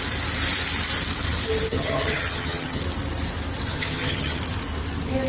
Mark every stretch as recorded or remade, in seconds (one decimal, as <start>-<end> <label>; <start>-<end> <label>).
0.0-1.7 recorded; 1.7-2.8 remade; 2.8-3.7 recorded; 3.7-4.4 remade; 4.4-5.3 recorded